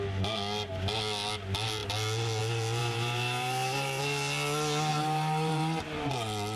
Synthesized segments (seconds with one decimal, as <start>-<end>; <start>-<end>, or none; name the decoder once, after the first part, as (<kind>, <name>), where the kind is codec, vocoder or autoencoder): 2.8-4.0 (vocoder, BigVGAN v2); 4.9-6.1